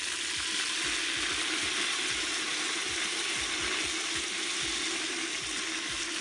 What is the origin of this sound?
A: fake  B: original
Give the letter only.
B